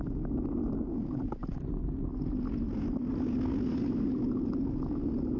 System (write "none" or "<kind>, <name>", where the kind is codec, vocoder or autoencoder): none